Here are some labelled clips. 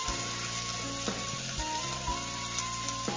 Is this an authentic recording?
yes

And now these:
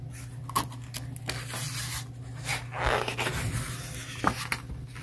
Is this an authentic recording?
yes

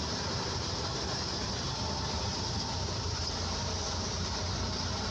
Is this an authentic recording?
no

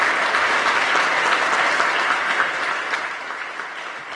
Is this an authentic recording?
yes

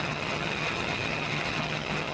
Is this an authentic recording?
no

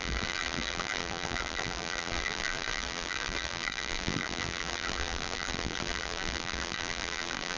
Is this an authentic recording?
no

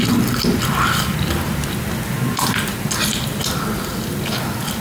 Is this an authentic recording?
yes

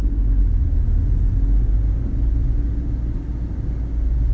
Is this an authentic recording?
yes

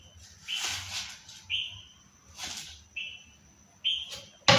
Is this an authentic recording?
yes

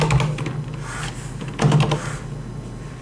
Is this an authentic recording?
yes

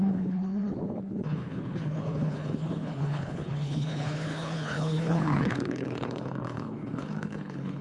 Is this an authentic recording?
no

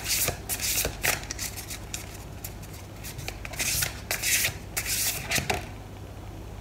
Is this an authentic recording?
yes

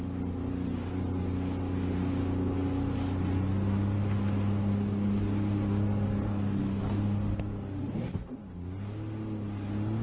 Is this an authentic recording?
yes